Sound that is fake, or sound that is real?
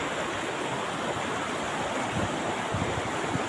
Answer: real